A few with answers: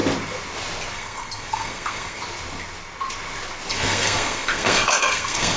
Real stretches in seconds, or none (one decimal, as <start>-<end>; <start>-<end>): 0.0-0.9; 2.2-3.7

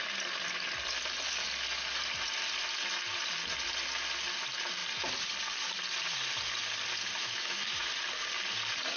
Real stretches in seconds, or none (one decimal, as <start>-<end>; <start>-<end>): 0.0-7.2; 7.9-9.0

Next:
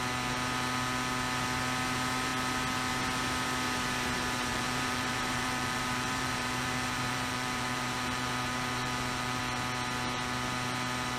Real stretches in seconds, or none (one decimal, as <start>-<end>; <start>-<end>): 0.0-4.5; 9.4-11.2

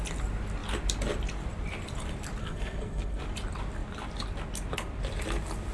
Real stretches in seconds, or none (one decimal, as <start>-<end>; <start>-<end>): 0.0-2.4; 3.2-5.7

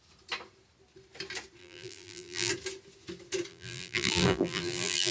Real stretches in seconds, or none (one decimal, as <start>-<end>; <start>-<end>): 0.0-1.6; 2.5-3.5